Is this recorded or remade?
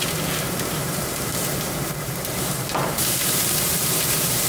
remade